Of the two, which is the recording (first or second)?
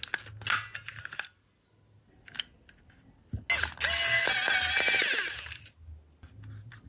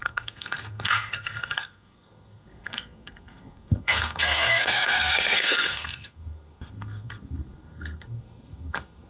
first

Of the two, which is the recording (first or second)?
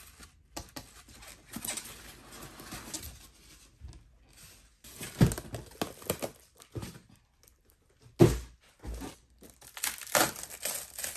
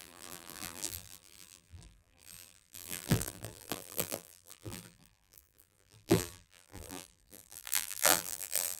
first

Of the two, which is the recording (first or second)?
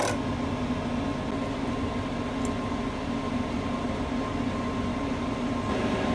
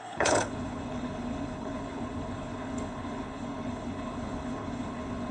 first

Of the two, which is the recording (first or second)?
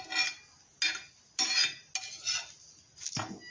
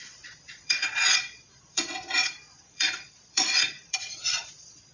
first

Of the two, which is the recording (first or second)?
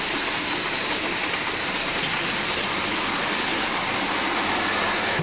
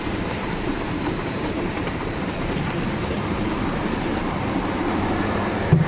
first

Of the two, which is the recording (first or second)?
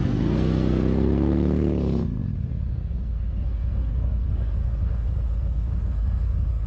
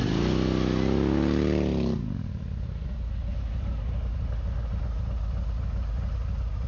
second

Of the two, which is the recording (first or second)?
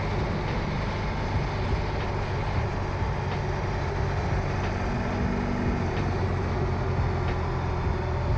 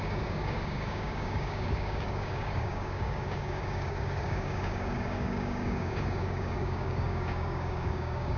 first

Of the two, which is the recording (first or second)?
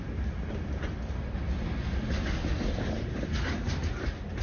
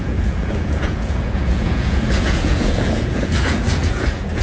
first